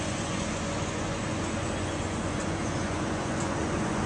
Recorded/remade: remade